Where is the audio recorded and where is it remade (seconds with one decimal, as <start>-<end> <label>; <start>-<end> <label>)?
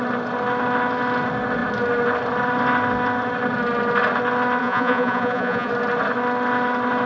0.0-4.6 recorded; 4.6-5.7 remade; 5.7-7.1 recorded